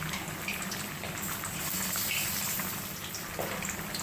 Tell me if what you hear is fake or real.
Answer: real